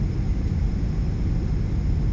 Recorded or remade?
recorded